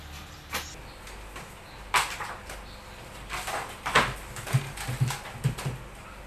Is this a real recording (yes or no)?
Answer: yes